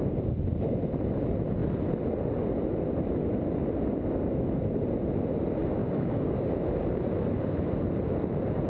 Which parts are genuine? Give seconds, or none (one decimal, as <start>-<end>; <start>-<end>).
0.0-5.8; 6.5-8.7